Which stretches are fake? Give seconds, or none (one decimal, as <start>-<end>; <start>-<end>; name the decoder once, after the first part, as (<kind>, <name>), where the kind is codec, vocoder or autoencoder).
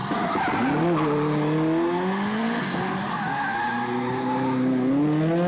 none